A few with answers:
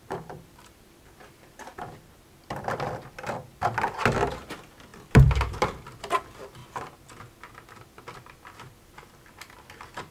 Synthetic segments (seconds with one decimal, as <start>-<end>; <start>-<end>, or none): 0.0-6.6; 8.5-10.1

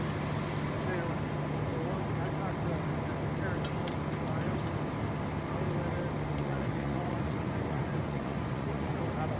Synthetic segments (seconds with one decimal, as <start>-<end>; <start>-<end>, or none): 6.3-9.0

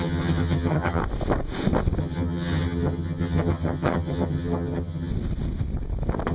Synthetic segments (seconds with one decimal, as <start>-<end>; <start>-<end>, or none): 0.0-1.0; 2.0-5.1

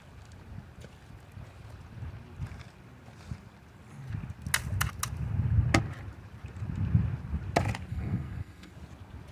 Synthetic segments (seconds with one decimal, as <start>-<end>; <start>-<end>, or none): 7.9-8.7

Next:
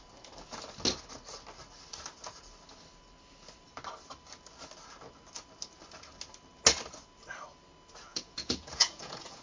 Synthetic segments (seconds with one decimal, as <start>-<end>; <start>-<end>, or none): 8.1-9.4

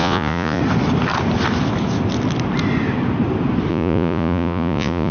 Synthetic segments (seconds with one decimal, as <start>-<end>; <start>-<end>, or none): 0.0-0.6; 3.7-5.1

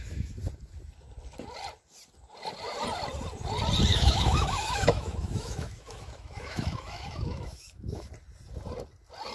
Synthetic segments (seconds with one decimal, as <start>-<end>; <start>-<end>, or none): 3.9-8.1

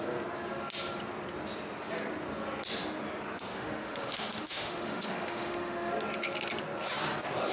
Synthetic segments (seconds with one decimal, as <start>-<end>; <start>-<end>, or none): 3.5-5.9